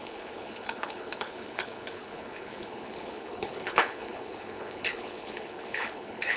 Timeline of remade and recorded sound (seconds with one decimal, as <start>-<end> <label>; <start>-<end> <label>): 0.0-6.4 remade